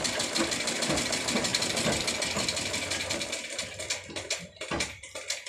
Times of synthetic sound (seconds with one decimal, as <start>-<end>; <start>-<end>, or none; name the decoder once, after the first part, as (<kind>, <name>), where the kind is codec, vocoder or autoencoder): 1.5-2.1 (vocoder, BigVGAN v2)